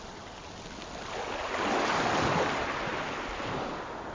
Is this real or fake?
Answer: real